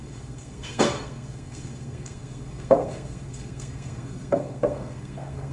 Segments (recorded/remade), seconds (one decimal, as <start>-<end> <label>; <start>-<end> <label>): 0.0-5.5 remade